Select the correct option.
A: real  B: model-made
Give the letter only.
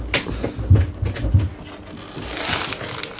A